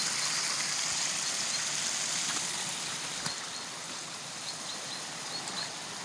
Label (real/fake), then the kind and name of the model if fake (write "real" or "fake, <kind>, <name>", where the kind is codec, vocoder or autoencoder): real